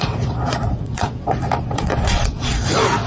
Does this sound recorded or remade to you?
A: remade